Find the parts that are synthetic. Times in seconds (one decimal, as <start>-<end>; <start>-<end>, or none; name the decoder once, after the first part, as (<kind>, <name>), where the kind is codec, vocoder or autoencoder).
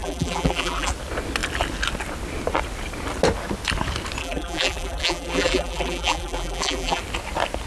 0.0-0.9 (vocoder, BigVGAN v2); 4.2-7.0